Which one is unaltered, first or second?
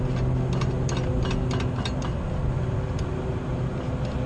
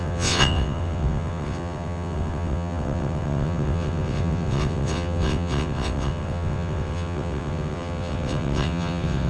first